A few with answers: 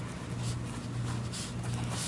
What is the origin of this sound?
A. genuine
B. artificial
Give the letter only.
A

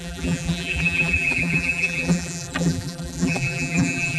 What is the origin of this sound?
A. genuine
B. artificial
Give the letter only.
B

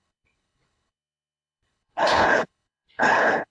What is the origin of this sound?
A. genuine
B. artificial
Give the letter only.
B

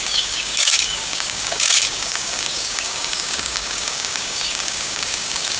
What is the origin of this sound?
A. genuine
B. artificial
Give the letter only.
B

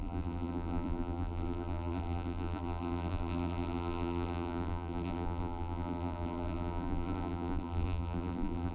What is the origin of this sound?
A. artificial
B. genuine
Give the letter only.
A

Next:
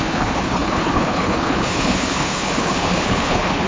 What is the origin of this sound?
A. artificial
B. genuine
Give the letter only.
A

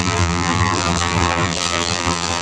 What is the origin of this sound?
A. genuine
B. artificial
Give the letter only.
B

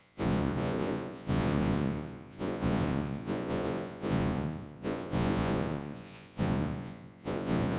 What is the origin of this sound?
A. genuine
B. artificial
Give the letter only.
B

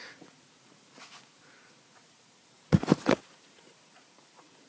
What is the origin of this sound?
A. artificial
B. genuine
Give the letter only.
A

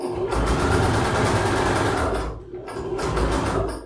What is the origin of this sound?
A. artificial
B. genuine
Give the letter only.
B